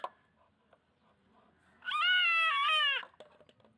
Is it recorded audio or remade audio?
recorded